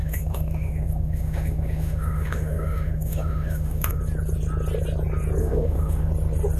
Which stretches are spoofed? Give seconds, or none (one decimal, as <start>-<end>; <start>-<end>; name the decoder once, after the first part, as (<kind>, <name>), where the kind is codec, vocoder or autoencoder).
0.0-4.0 (autoencoder, DAC-VAE); 5.4-6.1